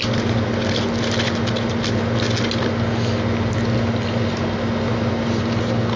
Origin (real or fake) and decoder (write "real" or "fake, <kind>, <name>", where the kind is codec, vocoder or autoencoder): real